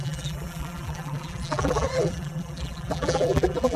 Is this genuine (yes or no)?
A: no